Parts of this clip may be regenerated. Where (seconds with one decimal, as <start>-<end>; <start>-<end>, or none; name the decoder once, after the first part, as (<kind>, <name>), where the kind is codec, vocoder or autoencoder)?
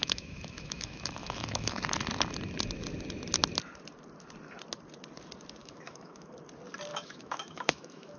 0.0-1.8 (autoencoder, DAC-VAE); 5.6-6.3; 6.9-8.2